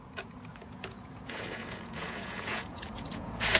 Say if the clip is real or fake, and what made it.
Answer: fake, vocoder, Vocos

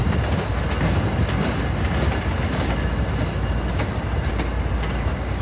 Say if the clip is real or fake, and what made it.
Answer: real